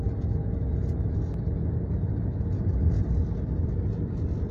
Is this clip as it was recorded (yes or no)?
yes